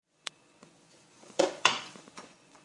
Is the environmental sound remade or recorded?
remade